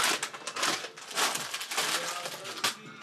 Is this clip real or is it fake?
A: real